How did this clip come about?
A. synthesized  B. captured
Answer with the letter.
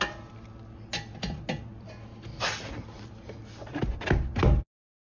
B